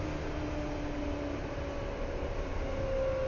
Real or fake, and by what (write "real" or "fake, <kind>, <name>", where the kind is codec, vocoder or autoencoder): real